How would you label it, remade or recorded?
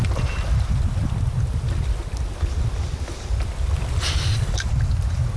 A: recorded